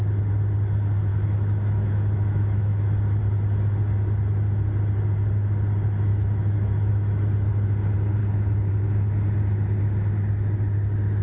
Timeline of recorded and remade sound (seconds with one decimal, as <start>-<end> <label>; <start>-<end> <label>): 0.0-1.1 recorded; 1.1-3.2 remade; 3.2-6.1 recorded; 6.1-6.9 remade; 6.9-8.2 recorded; 8.2-8.7 remade; 8.7-11.2 recorded